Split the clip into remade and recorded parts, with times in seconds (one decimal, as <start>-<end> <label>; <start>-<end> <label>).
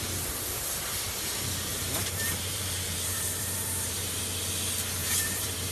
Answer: 0.0-1.7 recorded; 1.7-4.2 remade; 4.2-5.0 recorded; 5.0-5.7 remade